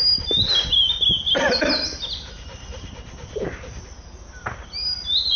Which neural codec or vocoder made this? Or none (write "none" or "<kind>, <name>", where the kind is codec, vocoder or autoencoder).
none